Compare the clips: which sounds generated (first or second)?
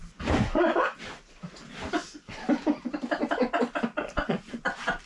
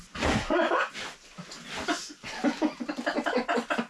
first